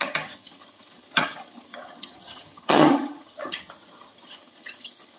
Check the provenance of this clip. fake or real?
fake